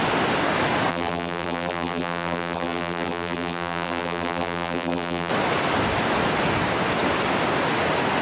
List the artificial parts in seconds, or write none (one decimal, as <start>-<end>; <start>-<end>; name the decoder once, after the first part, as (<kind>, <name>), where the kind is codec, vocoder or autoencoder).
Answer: 0.9-5.3 (vocoder, BigVGAN v2)

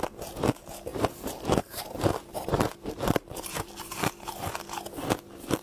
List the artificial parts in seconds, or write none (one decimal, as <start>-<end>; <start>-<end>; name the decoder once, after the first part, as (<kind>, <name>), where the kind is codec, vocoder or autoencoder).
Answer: 0.9-4.3 (vocoder, BigVGAN v2)

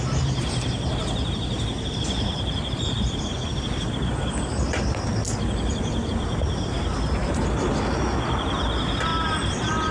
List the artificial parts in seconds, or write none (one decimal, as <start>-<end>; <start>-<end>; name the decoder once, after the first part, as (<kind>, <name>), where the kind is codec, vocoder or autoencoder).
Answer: 7.2-7.8 (vocoder, BigVGAN v2)